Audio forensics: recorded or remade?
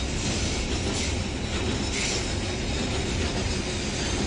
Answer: recorded